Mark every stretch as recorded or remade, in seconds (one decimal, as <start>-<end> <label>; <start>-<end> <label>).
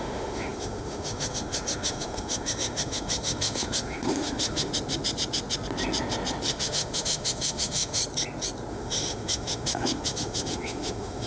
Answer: 0.0-4.7 remade; 4.7-6.5 recorded; 6.5-8.0 remade; 8.0-8.7 recorded; 8.7-11.3 remade